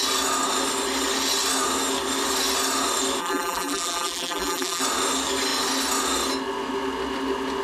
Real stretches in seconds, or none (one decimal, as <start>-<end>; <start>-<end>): 0.0-3.2; 4.8-7.6